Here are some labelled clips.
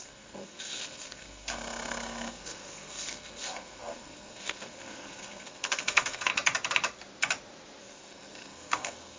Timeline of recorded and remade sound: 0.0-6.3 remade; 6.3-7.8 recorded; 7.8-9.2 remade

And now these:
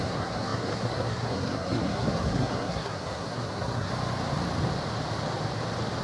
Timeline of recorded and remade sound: 0.0-3.9 remade; 3.9-6.0 recorded